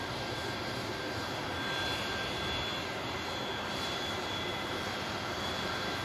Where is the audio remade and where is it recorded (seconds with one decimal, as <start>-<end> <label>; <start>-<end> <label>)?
0.0-0.9 remade; 0.9-3.7 recorded; 3.7-6.0 remade